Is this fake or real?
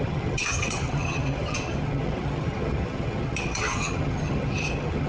fake